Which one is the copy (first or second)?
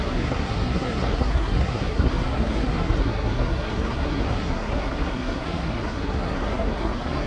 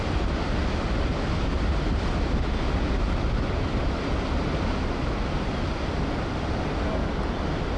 first